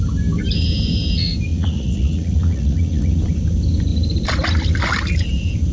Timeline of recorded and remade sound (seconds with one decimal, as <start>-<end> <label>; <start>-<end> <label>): 0.0-1.5 recorded; 1.5-3.2 remade; 3.2-5.7 recorded